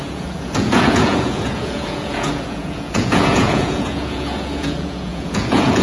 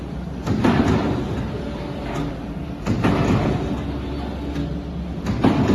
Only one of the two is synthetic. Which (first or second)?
first